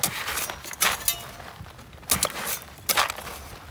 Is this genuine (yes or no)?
yes